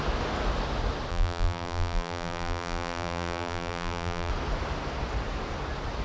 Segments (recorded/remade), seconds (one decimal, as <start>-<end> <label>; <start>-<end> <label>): 0.0-1.1 recorded; 1.1-4.3 remade; 4.3-6.0 recorded